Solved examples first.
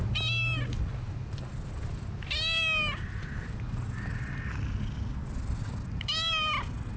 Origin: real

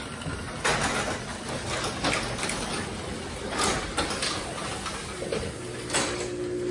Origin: real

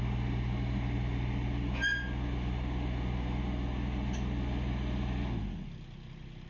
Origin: real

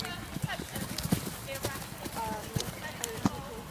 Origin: real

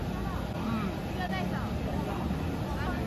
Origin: real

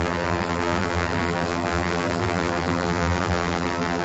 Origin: fake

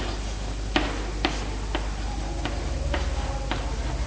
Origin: real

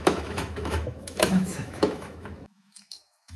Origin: fake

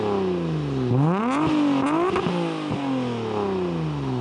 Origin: real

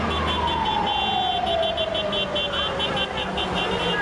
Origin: real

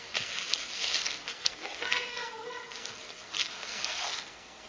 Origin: fake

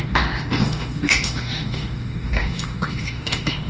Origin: fake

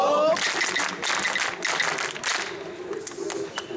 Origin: real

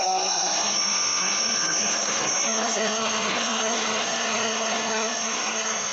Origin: fake